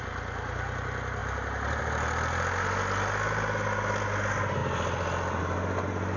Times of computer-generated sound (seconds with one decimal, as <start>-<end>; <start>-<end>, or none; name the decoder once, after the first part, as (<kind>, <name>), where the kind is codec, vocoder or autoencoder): none